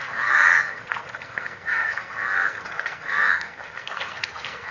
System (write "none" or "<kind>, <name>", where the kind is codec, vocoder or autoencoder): codec, SNAC